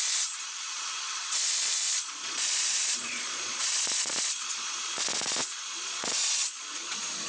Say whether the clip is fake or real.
fake